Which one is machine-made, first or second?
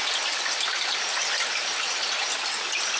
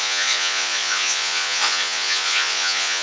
second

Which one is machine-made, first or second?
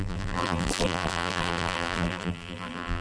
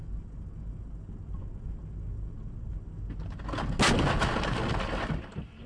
first